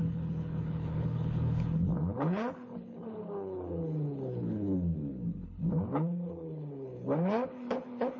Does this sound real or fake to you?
fake